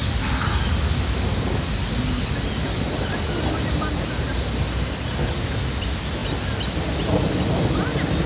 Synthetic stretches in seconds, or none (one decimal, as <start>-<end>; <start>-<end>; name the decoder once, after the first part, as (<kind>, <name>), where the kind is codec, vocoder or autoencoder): none